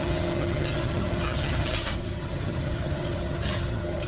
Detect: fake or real fake